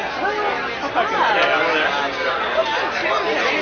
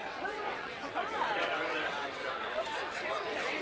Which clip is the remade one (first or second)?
second